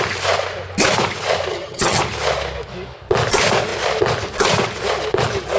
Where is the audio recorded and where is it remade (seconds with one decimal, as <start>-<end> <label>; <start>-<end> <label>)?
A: 0.0-1.5 recorded; 1.5-2.0 remade; 2.0-5.6 recorded